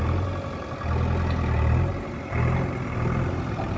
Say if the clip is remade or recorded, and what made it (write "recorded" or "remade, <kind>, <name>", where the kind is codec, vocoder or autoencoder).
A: recorded